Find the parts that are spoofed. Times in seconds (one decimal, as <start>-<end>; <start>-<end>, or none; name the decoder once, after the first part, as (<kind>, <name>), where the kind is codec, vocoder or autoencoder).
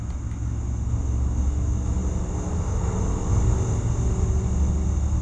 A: none